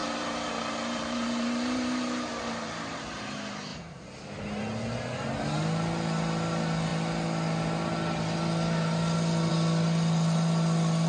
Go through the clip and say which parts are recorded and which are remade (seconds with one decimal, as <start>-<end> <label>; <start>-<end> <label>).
0.0-3.2 remade; 3.2-11.1 recorded